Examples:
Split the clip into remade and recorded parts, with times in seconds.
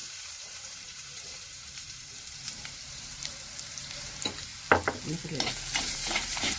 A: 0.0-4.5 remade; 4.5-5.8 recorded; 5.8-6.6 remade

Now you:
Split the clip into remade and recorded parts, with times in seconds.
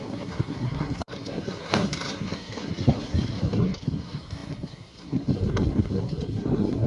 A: 0.0-6.9 remade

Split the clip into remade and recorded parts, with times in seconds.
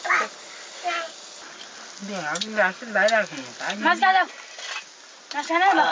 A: 0.0-5.9 recorded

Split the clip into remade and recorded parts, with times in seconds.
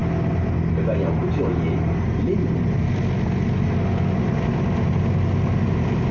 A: 0.0-6.1 recorded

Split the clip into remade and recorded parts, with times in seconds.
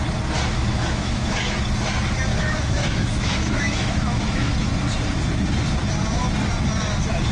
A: 0.0-0.7 recorded; 0.7-1.5 remade; 1.5-2.3 recorded; 2.3-4.5 remade; 4.5-7.3 recorded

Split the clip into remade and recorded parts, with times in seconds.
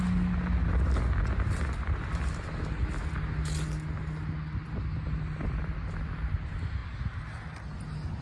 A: 0.0-8.2 recorded